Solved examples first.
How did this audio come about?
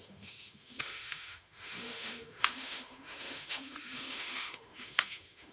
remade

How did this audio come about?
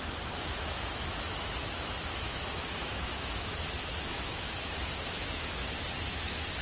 remade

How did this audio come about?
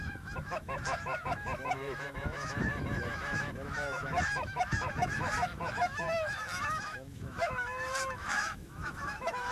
remade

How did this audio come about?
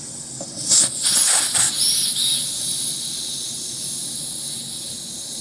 recorded